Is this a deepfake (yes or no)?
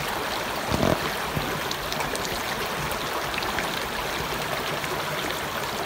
no